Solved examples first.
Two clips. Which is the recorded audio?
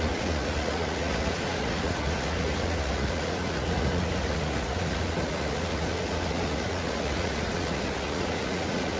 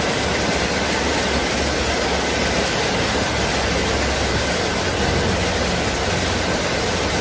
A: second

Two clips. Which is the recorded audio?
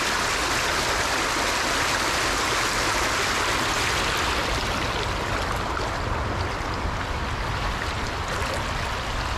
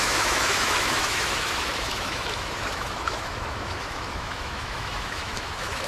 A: first